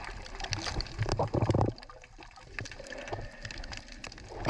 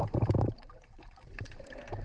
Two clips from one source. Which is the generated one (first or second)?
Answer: second